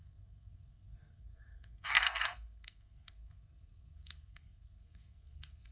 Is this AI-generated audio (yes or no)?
yes